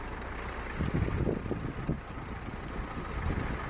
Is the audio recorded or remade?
recorded